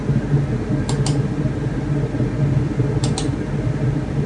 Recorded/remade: recorded